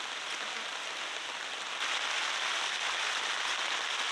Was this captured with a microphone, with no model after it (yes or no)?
yes